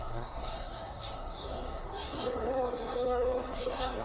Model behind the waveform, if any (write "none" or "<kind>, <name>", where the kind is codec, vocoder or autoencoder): codec, SNAC